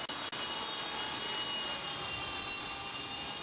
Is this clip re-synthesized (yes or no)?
no